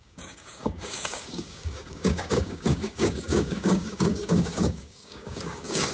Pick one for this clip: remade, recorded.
remade